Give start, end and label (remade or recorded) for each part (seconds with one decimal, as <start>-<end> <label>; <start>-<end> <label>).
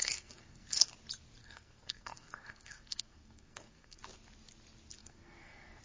0.0-0.9 remade; 0.9-1.4 recorded; 1.4-4.0 remade; 4.0-5.0 recorded; 5.0-5.8 remade